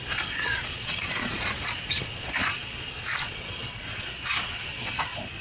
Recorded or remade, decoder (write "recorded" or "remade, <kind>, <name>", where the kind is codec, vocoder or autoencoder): remade, vocoder, Vocos